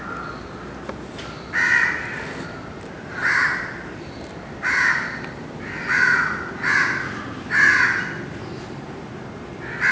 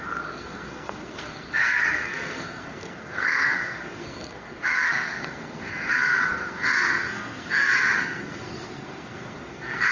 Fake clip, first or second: second